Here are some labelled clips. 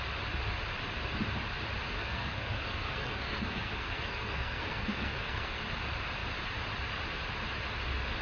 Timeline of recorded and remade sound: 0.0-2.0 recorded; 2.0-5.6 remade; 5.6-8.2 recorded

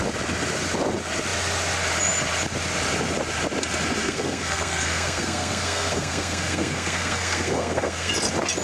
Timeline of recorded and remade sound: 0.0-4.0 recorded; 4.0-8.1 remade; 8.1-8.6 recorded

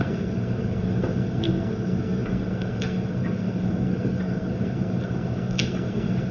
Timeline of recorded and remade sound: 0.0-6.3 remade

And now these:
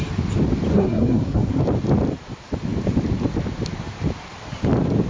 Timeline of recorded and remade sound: 0.0-0.7 recorded; 0.7-1.6 remade; 1.6-5.1 recorded